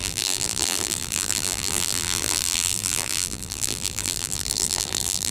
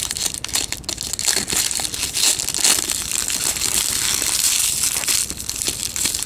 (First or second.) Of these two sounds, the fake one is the first